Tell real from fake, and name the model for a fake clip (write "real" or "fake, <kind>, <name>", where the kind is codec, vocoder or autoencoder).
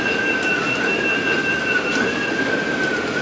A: real